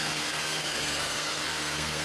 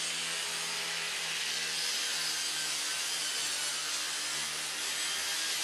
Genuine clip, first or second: second